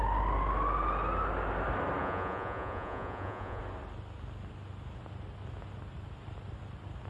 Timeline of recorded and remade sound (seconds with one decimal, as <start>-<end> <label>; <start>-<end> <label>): 0.0-2.0 recorded; 2.0-3.6 remade; 3.6-7.1 recorded